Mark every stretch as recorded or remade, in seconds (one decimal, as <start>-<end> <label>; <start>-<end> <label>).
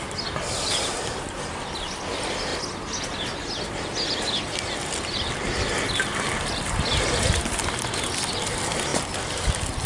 0.0-8.9 recorded; 8.9-9.5 remade; 9.5-9.9 recorded